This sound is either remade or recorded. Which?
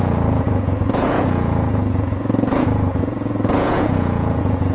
remade